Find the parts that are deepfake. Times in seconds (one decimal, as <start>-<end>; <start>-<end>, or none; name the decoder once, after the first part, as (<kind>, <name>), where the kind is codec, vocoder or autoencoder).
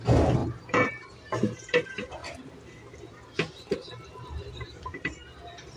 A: 0.0-2.2 (vocoder, BigVGAN v2); 4.1-5.8